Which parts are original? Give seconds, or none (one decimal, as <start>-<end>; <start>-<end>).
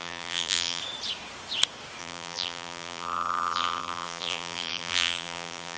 0.8-2.0